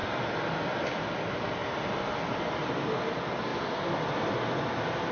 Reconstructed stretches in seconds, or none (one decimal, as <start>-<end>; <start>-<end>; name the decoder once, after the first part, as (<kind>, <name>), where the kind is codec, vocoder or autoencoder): none